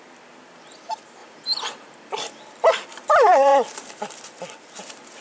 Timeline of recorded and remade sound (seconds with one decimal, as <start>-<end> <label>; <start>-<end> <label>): 0.0-3.5 remade; 3.5-4.8 recorded; 4.8-5.2 remade